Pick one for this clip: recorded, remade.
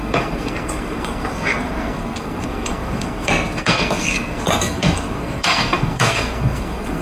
remade